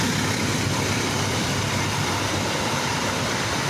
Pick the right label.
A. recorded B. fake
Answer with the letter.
B